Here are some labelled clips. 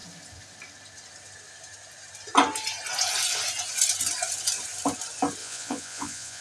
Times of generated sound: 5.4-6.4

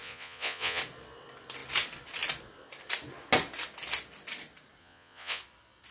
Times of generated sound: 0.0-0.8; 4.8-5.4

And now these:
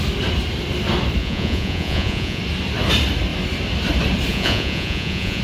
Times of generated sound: 1.2-2.4; 4.3-5.4

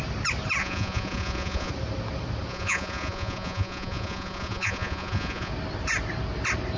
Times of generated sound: 0.6-1.7; 2.5-5.5

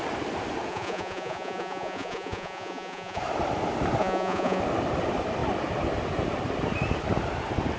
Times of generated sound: 0.7-3.2; 4.0-4.6